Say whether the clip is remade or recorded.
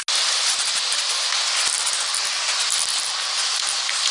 recorded